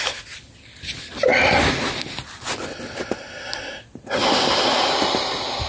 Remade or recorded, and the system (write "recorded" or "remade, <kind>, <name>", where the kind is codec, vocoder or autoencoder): recorded